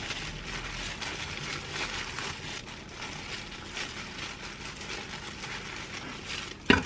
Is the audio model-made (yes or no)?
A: no